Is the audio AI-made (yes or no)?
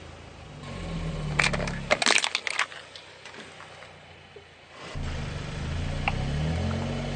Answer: no